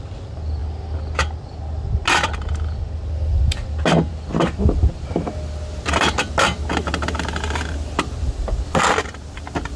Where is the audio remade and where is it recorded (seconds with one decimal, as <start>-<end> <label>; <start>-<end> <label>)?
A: 0.0-9.8 recorded